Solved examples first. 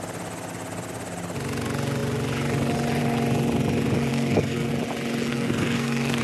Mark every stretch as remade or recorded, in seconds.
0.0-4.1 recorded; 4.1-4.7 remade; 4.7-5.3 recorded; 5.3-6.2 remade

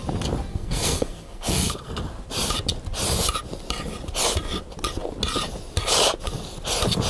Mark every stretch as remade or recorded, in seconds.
0.0-0.5 recorded; 0.5-2.0 remade; 2.0-7.1 recorded

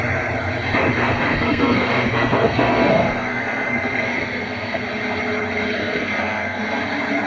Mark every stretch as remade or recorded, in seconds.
0.0-0.9 recorded; 0.9-4.8 remade; 4.8-5.8 recorded; 5.8-6.8 remade; 6.8-7.3 recorded

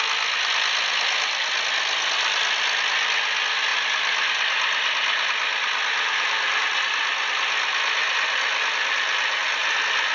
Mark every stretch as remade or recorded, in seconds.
0.0-10.1 recorded